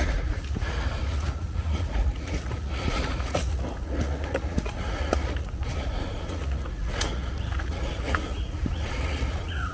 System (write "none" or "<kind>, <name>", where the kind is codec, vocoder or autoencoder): vocoder, Vocos